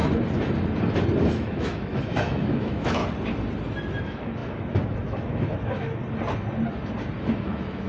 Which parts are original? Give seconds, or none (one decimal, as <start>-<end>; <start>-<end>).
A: 0.0-1.2; 3.0-4.0; 6.0-7.4